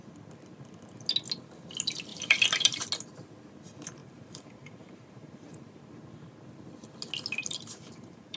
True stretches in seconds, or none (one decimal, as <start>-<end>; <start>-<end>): 0.0-2.1; 2.8-4.0; 5.8-7.4